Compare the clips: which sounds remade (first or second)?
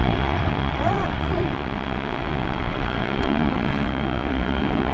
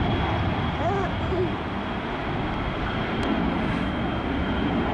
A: first